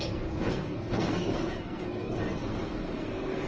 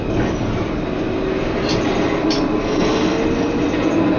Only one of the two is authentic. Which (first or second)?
second